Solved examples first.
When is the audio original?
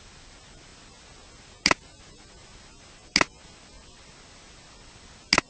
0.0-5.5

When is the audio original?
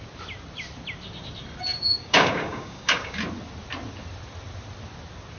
0.0-2.0; 3.2-5.4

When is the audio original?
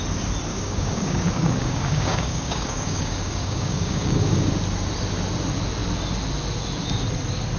0.0-0.5; 4.5-7.6